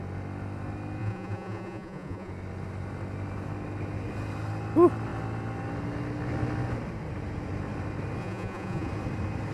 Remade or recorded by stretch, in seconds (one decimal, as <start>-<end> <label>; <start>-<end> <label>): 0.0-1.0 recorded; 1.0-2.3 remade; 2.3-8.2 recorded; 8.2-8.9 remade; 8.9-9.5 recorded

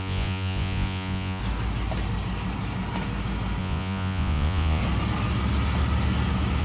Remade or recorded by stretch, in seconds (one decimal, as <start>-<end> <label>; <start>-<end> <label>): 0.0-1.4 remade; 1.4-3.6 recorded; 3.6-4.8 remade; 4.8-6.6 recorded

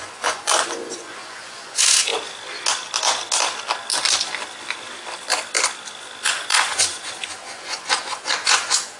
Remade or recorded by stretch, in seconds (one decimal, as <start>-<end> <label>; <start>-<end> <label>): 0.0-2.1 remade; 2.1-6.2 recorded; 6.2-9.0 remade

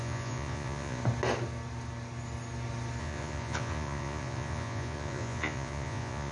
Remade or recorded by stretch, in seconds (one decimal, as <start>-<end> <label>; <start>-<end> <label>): 0.0-1.0 remade; 1.0-3.0 recorded; 3.0-6.3 remade

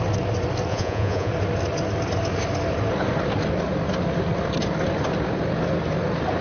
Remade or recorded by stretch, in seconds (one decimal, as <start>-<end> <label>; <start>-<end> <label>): 0.0-0.7 recorded; 0.7-1.3 remade; 1.3-6.4 recorded

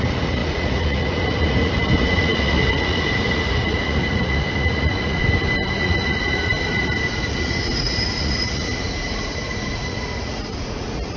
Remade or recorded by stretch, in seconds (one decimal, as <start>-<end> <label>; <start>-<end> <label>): 0.0-5.2 remade; 5.2-5.8 recorded; 5.8-11.2 remade

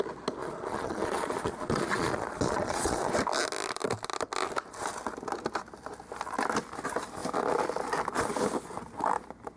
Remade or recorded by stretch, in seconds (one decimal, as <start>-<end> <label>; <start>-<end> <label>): 0.0-0.4 recorded; 0.4-3.1 remade; 3.1-9.6 recorded